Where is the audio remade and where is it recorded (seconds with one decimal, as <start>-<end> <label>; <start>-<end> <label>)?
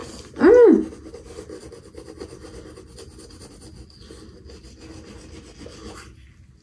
0.0-6.6 recorded